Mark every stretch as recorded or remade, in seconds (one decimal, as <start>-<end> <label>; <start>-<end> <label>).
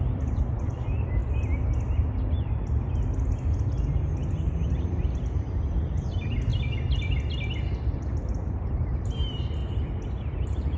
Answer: 0.0-1.2 remade; 1.2-4.7 recorded; 4.7-6.5 remade; 6.5-7.8 recorded; 7.8-9.6 remade; 9.6-10.4 recorded; 10.4-10.8 remade